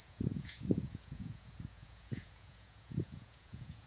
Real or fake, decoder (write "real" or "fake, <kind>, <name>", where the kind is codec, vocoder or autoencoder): fake, vocoder, Vocos